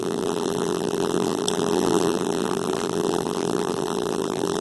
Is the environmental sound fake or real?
fake